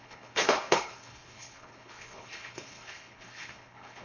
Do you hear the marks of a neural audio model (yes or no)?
yes